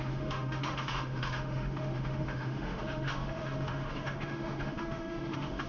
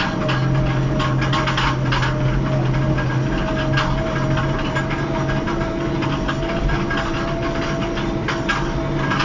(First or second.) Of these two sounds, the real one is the second